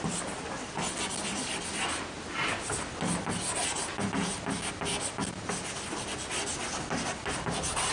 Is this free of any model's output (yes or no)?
yes